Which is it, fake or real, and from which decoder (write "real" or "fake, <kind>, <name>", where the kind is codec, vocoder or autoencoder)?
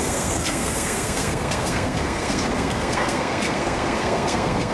fake, codec, SNAC